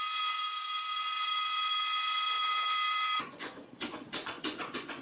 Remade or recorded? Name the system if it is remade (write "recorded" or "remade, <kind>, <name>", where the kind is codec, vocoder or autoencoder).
remade, vocoder, Vocos